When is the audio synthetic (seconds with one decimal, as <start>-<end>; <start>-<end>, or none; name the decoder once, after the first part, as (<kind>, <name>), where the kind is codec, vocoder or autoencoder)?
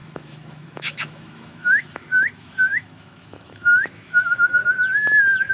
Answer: 0.0-4.6 (autoencoder, DAC-VAE)